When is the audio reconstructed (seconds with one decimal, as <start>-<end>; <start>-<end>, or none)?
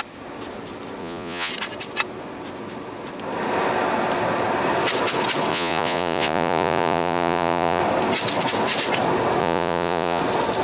1.0-1.5; 5.5-7.8; 9.4-10.2